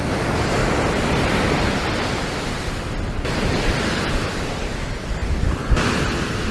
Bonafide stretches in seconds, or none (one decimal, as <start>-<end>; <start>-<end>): 0.0-6.5